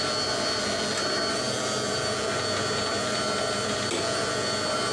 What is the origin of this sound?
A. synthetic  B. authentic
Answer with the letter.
B